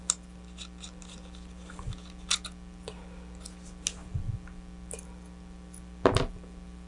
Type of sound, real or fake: real